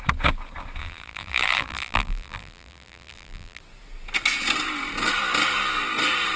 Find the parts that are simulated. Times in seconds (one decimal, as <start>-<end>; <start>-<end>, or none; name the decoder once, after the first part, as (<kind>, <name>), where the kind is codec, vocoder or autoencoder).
0.8-3.6 (vocoder, BigVGAN v2)